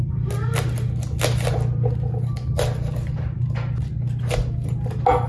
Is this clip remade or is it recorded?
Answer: recorded